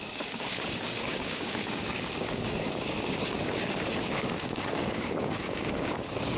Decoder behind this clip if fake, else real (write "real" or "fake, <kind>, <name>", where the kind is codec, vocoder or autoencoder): fake, codec, DAC